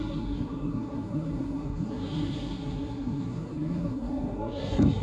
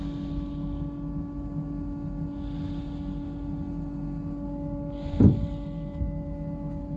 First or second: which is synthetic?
first